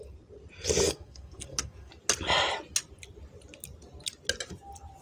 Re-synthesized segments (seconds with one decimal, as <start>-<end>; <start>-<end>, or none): 0.9-1.9